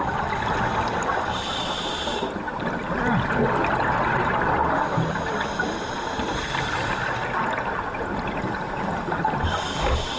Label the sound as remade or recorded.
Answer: recorded